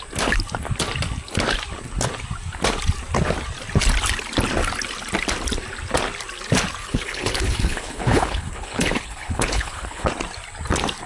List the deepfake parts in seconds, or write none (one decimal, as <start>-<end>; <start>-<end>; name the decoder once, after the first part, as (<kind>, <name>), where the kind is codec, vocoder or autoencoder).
6.8-10.1 (codec, HILCodec)